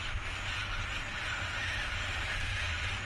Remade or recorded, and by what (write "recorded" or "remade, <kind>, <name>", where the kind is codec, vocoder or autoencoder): recorded